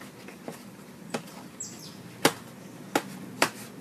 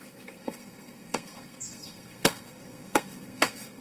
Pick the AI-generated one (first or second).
second